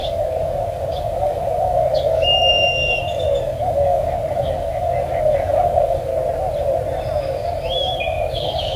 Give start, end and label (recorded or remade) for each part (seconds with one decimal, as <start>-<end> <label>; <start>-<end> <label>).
0.0-6.1 remade; 6.1-7.2 recorded; 7.2-8.8 remade